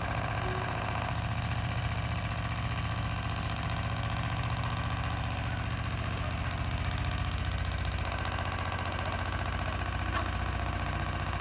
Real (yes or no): yes